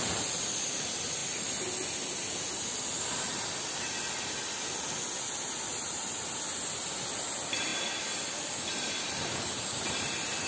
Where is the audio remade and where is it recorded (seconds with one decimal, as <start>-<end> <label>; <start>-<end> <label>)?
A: 0.0-10.5 recorded